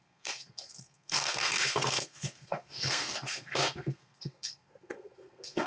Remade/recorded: remade